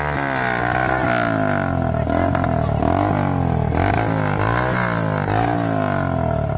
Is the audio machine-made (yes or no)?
no